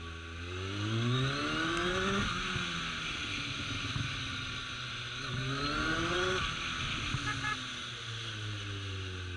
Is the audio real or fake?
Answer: real